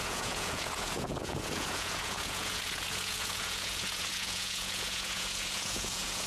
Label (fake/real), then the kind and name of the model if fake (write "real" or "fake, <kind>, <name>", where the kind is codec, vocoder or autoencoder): fake, vocoder, Vocos